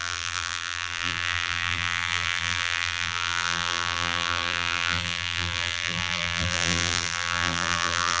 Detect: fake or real fake